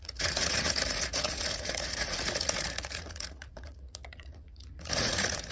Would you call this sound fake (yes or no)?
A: yes